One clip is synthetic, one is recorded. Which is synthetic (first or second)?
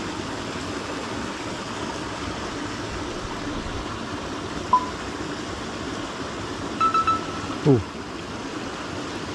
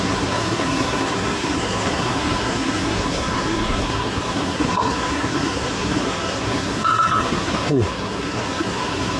second